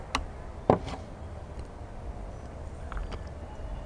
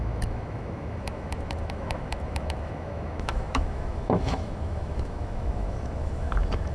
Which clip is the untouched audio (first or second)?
first